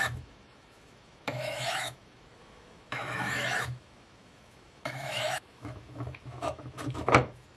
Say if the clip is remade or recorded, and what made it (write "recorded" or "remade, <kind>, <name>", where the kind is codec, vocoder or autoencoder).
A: remade, autoencoder, DAC-VAE